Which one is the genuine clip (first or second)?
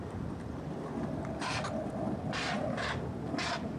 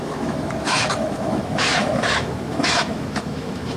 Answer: first